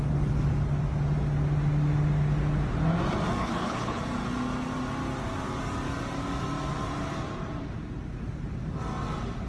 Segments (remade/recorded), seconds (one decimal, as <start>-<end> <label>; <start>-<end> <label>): 0.0-3.4 recorded; 3.4-4.0 remade; 4.0-9.5 recorded